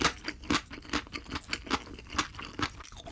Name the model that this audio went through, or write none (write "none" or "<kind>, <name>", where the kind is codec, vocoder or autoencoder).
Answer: none